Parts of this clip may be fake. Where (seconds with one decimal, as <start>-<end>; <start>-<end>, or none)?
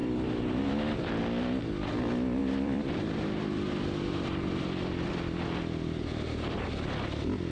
0.0-1.2; 2.4-6.9